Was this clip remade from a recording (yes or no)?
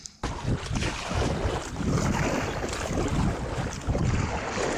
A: no